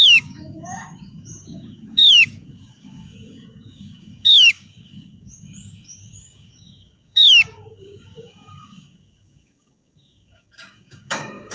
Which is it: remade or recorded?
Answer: remade